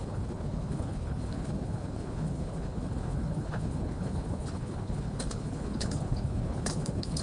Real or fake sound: fake